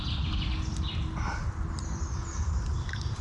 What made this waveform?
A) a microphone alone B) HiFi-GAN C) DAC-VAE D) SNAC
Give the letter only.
A